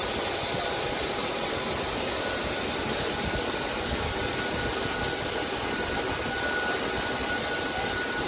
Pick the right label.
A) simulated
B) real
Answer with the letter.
B